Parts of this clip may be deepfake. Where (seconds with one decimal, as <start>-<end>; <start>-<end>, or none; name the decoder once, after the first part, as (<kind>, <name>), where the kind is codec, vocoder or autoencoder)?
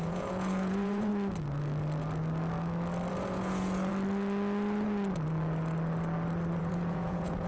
0.0-1.1 (vocoder, Vocos); 3.1-3.9; 6.6-7.5